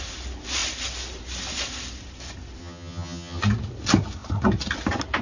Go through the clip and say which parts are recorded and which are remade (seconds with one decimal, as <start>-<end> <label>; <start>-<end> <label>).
0.0-2.6 recorded; 2.6-3.4 remade; 3.4-5.2 recorded